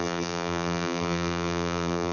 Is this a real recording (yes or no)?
no